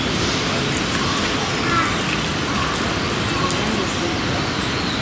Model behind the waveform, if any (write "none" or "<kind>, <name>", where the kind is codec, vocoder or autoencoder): none